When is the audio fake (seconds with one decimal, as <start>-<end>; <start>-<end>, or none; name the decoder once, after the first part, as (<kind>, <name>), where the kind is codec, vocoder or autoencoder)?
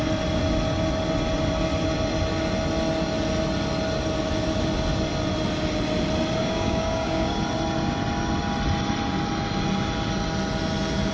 6.4-7.4 (codec, DAC)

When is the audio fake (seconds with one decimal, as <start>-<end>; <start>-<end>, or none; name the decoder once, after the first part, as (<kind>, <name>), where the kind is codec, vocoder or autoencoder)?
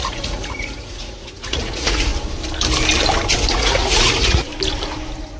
0.0-2.1 (vocoder, Vocos); 3.5-4.5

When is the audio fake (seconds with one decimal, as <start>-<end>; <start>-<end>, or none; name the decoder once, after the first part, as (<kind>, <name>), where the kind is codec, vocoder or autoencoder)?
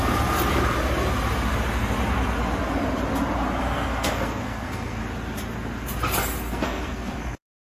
3.6-5.0 (codec, SNAC); 6.5-7.7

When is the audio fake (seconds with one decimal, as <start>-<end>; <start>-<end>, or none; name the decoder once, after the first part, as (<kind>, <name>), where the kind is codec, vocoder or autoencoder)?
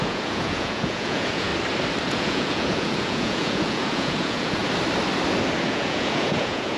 0.0-1.5 (vocoder, Vocos); 2.1-4.6; 5.6-6.8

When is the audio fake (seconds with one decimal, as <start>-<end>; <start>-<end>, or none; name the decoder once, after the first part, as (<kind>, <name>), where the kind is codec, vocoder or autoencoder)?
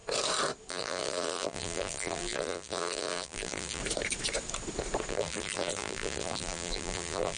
0.7-3.8 (vocoder, BigVGAN v2); 5.1-7.4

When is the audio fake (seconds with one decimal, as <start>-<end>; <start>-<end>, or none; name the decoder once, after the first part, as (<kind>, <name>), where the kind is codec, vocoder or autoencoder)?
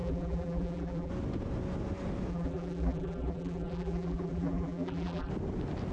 0.0-1.1 (vocoder, BigVGAN v2); 2.3-5.3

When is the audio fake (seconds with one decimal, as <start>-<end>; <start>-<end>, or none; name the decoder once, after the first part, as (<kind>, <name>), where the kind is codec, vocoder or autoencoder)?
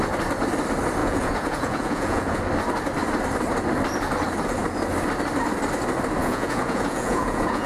1.0-2.4 (vocoder, Vocos); 6.2-7.7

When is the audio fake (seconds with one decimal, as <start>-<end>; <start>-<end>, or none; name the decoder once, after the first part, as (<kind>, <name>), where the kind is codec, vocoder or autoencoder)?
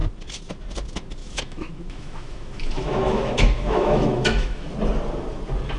1.2-4.7 (autoencoder, DAC-VAE)